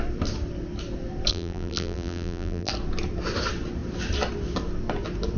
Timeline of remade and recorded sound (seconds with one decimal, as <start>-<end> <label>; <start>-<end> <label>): 0.0-1.3 recorded; 1.3-2.7 remade; 2.7-5.4 recorded